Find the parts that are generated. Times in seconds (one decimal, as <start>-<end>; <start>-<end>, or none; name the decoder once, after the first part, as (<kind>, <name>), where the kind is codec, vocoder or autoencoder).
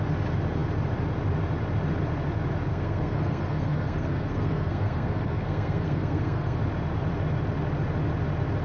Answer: 2.7-6.6 (codec, SNAC)